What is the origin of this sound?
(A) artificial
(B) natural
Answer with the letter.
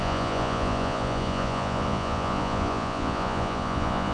A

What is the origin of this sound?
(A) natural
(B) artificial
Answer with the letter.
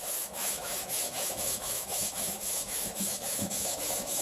B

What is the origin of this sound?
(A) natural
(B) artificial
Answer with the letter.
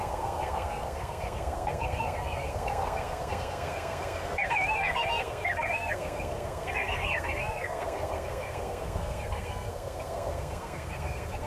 B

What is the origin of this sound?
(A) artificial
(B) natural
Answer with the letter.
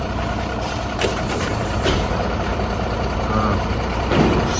A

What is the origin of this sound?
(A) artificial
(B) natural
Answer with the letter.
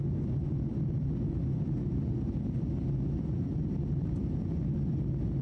B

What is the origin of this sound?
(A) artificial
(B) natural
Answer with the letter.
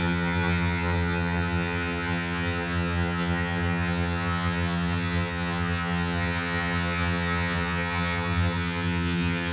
A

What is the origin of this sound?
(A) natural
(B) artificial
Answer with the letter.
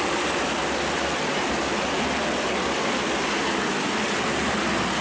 A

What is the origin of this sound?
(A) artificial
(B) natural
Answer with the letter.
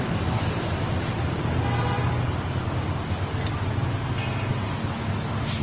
B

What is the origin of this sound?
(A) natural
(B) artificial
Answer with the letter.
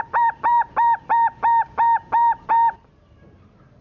A